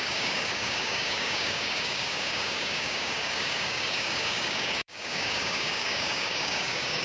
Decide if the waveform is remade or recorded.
remade